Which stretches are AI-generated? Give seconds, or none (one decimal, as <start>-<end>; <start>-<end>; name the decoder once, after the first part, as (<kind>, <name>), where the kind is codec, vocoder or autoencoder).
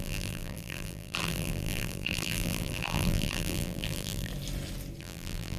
0.0-4.3 (vocoder, BigVGAN v2); 5.0-5.6